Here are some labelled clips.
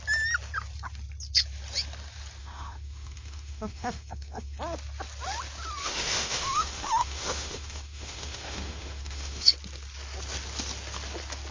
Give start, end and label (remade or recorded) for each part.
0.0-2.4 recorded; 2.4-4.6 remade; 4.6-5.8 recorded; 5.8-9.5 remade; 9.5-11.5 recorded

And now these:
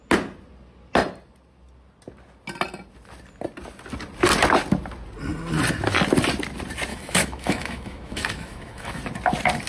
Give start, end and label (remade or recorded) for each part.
0.0-6.9 recorded; 6.9-9.0 remade; 9.0-9.7 recorded

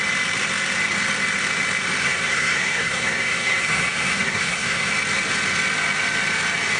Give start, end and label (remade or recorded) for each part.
0.0-2.0 recorded; 2.0-4.9 remade; 4.9-6.8 recorded

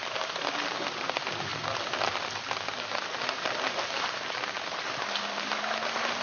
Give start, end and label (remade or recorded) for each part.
0.0-6.2 recorded

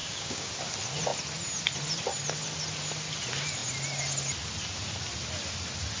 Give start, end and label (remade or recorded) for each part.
0.0-0.5 remade; 0.5-6.0 recorded